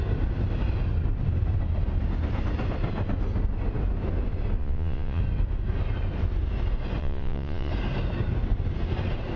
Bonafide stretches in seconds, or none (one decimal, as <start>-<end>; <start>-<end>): 0.0-4.6; 5.2-7.0; 7.7-9.4